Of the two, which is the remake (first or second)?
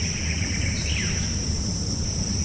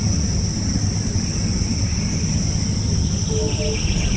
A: first